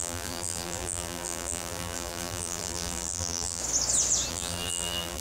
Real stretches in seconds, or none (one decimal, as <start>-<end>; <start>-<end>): 3.6-4.3